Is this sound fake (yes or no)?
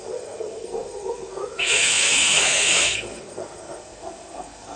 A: yes